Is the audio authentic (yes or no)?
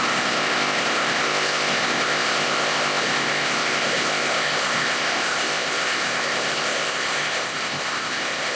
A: no